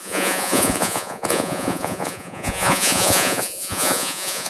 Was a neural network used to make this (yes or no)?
yes